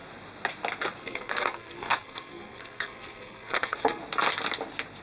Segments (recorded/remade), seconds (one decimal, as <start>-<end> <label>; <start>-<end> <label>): 0.0-1.0 recorded; 1.0-4.0 remade; 4.0-5.0 recorded

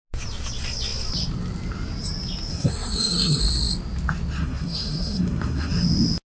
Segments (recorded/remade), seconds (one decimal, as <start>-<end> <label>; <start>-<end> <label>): 0.0-2.5 recorded; 2.5-3.4 remade; 3.4-4.4 recorded; 4.4-5.7 remade; 5.7-6.3 recorded

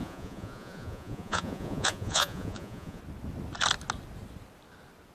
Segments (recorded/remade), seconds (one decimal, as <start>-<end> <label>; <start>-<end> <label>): 0.0-3.0 remade; 3.0-5.1 recorded

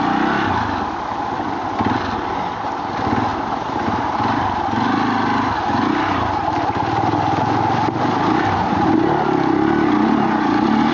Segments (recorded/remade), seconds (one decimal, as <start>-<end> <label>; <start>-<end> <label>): 0.0-3.3 recorded; 3.3-6.5 remade; 6.5-10.9 recorded

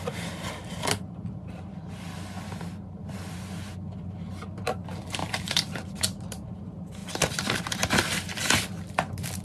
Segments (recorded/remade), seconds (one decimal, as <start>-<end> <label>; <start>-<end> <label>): 0.0-5.2 recorded; 5.2-6.0 remade; 6.0-7.0 recorded; 7.0-8.8 remade; 8.8-9.4 recorded